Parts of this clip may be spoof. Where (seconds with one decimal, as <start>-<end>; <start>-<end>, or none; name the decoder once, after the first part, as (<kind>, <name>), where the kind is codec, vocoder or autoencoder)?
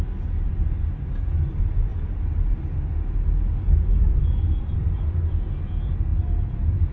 none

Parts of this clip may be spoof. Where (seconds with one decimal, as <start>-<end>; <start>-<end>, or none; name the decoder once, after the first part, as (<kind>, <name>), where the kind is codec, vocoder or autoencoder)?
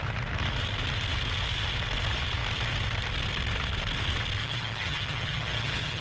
4.4-6.0 (vocoder, HiFi-GAN)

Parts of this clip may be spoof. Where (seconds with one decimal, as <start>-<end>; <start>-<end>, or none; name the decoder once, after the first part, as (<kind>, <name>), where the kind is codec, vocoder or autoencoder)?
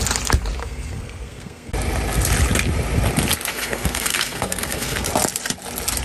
0.6-1.7 (codec, SNAC); 3.5-5.1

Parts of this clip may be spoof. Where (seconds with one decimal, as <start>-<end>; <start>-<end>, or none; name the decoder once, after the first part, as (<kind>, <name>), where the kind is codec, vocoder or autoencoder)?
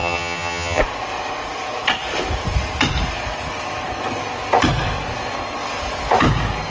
0.0-0.8 (vocoder, HiFi-GAN)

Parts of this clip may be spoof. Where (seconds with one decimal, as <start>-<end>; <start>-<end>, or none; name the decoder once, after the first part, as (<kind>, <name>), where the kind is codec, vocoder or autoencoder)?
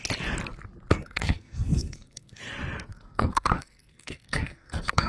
0.9-2.4 (codec, SNAC); 2.9-5.1